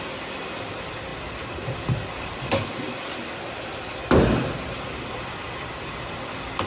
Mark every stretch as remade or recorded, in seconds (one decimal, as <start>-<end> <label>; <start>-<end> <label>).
0.0-6.7 recorded